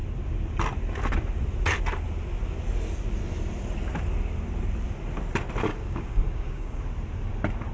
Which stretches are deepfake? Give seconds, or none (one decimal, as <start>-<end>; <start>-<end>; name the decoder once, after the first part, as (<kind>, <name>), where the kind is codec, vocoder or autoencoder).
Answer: 5.7-6.8 (codec, DAC)